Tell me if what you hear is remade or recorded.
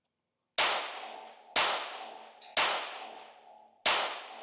recorded